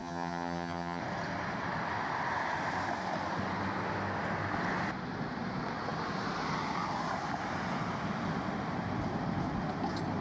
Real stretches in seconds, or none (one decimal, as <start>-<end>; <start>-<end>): 1.0-10.2